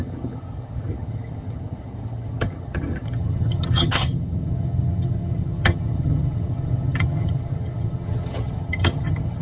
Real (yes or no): no